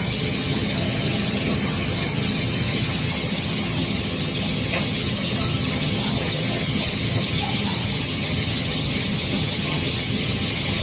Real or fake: fake